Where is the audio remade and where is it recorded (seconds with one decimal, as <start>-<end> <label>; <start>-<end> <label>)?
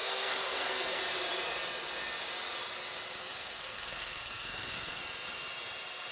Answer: 0.0-1.0 remade; 1.0-3.2 recorded; 3.2-5.0 remade; 5.0-6.1 recorded